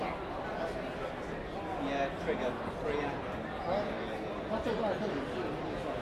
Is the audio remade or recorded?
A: recorded